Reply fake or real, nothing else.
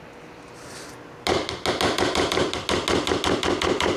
real